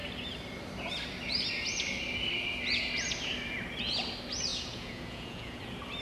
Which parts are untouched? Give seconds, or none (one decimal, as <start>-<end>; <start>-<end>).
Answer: 0.0-4.5; 5.6-6.0